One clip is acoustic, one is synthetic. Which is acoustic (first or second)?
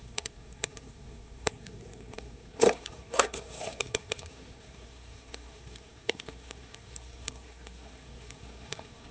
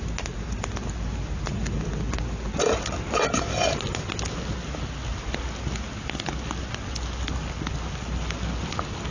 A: second